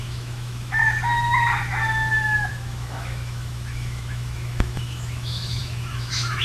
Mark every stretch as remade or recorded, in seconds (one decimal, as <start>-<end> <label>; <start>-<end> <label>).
0.0-0.8 remade; 0.8-2.5 recorded; 2.5-6.4 remade